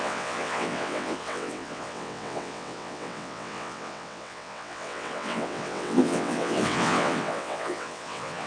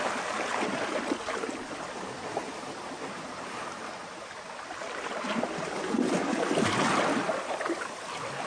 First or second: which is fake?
first